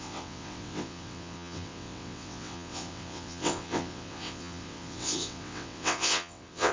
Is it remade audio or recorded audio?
remade